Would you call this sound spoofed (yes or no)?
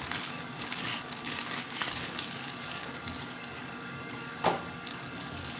yes